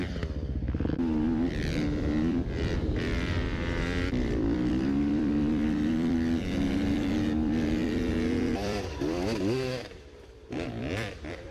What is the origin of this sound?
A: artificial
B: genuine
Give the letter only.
A